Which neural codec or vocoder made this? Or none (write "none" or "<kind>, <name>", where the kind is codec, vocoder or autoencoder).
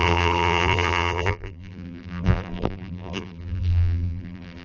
vocoder, BigVGAN v2